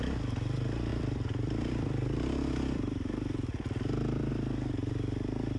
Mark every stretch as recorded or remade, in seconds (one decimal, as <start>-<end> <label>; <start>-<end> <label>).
0.0-0.9 recorded; 0.9-4.3 remade; 4.3-5.6 recorded